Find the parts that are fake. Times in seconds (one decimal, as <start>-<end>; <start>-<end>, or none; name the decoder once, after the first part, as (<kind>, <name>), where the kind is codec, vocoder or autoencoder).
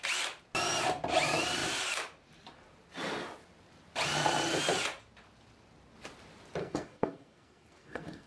6.6-8.3 (codec, SNAC)